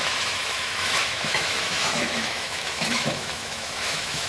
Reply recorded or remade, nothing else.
remade